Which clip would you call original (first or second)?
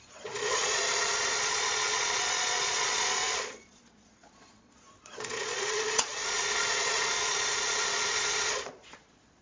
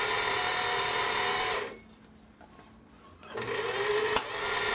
second